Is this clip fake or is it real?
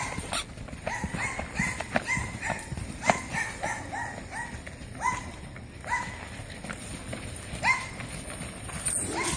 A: real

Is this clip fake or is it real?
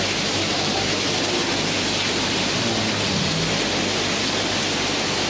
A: real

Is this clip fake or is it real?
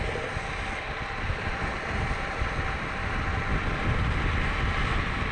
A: real